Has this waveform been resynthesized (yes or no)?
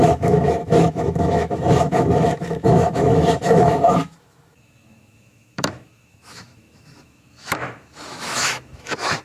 yes